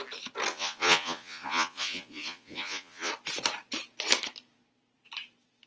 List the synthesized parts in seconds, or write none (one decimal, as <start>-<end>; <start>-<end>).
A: 0.5-3.1